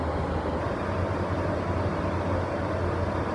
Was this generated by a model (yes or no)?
no